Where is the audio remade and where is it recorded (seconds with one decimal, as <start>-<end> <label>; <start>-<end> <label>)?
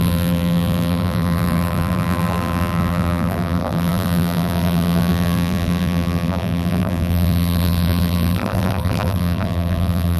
0.0-10.2 remade